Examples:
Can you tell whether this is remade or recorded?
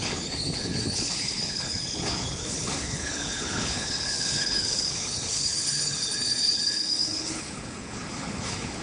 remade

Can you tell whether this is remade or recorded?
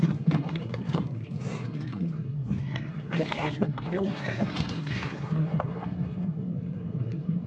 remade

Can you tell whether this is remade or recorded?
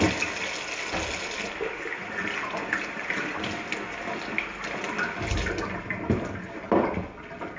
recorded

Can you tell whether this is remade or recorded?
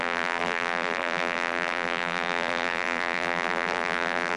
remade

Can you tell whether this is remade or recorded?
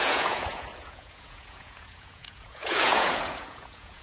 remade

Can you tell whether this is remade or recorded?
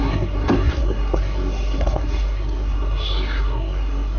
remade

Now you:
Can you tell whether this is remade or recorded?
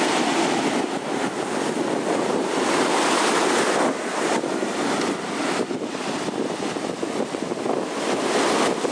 recorded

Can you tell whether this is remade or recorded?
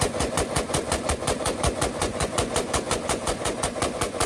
remade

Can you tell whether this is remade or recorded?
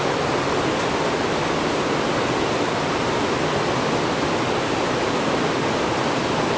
recorded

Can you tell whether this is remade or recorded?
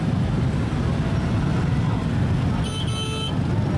recorded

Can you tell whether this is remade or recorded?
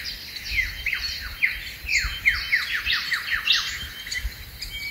recorded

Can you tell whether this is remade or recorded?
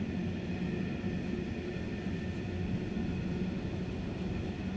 recorded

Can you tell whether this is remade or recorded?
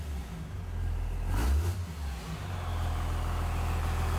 recorded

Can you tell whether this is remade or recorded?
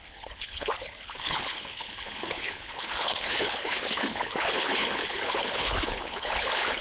remade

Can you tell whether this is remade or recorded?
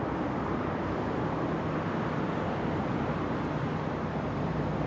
remade